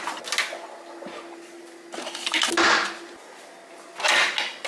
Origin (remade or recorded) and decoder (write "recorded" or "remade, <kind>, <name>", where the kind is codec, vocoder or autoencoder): recorded